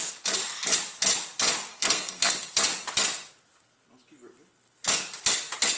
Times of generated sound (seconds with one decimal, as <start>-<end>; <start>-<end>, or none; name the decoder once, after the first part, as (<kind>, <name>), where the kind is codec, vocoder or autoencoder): 1.7-2.3 (codec, SNAC)